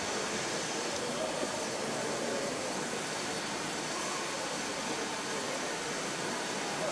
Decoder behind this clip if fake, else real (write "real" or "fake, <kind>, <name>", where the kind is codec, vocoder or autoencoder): real